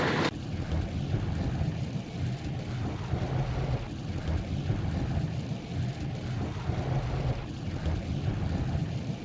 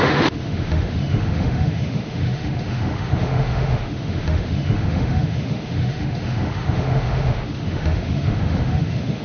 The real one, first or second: first